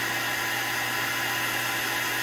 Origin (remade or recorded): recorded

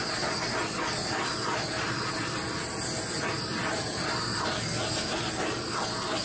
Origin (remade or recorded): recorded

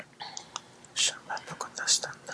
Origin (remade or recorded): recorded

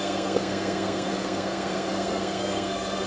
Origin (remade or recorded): remade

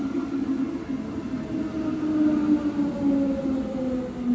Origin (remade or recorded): recorded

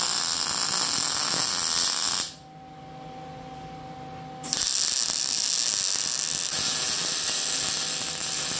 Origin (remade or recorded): recorded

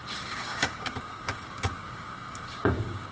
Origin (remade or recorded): remade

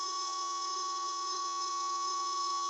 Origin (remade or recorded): remade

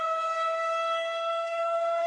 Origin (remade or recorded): remade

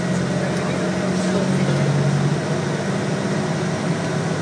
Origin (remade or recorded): recorded